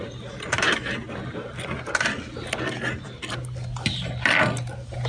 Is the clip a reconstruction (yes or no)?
no